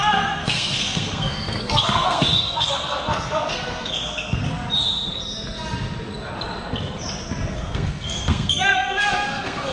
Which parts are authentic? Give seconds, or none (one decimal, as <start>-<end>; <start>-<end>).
4.4-7.5